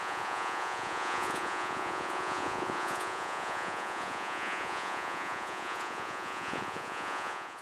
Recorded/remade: remade